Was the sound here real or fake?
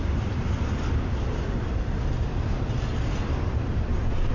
real